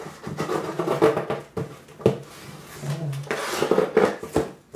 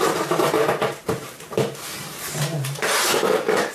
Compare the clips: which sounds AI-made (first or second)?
second